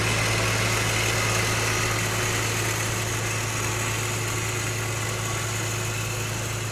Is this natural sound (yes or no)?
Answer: yes